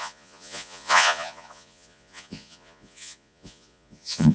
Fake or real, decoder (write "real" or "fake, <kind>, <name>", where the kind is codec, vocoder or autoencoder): fake, vocoder, Vocos